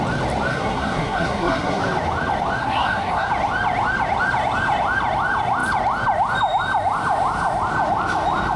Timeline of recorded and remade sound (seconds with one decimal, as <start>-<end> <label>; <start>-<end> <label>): 0.0-0.5 recorded; 0.5-1.8 remade; 1.8-2.6 recorded; 2.6-3.3 remade; 3.3-8.6 recorded